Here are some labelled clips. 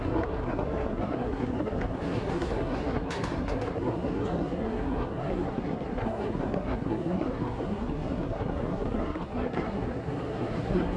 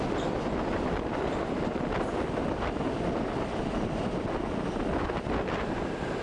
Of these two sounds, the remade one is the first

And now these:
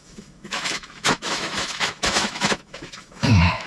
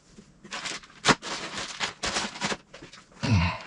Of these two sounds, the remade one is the first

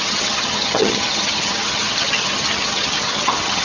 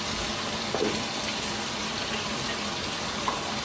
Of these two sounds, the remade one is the first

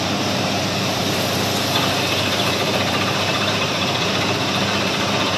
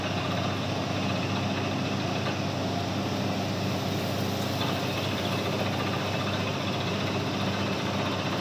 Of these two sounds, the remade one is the first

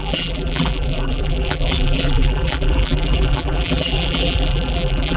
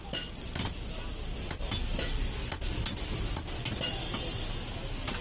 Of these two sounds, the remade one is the first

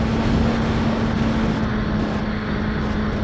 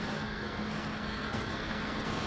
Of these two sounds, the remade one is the second